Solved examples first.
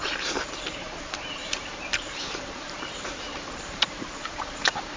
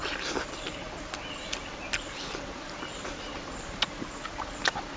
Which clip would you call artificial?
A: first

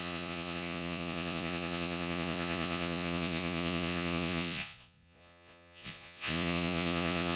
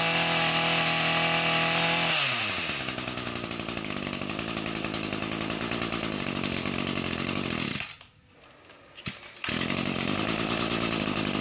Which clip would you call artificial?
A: first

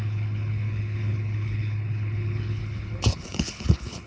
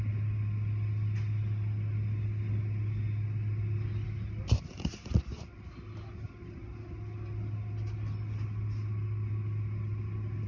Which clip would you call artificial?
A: first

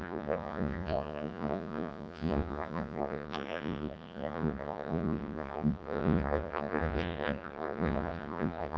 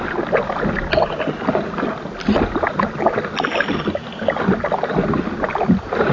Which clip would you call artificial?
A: first